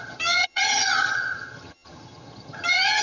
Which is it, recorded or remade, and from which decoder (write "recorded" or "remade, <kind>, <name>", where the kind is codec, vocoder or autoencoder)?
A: remade, vocoder, HiFi-GAN